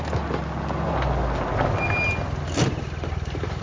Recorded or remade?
recorded